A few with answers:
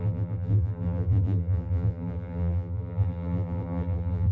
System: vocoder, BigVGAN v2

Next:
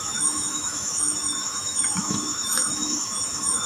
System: autoencoder, DAC-VAE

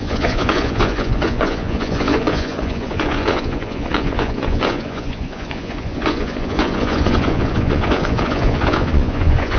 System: vocoder, Vocos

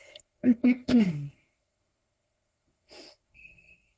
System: codec, SNAC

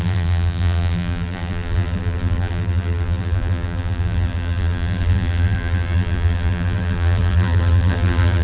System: vocoder, BigVGAN v2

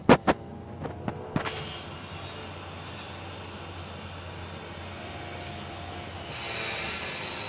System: none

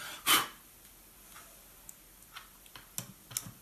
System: none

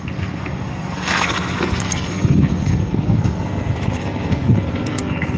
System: codec, SNAC